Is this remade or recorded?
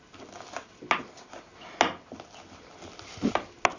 recorded